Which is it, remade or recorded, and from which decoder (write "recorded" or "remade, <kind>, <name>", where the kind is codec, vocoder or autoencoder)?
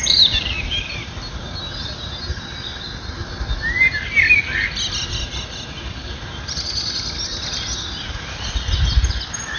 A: recorded